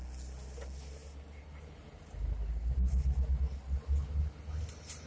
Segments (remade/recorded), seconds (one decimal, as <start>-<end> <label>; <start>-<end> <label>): 0.0-5.1 recorded